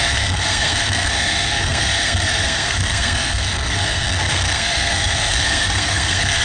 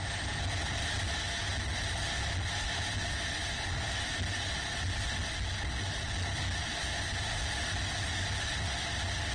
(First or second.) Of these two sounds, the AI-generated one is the first